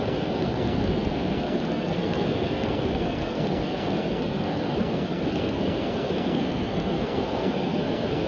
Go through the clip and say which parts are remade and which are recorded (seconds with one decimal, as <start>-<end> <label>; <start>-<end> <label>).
0.0-8.3 remade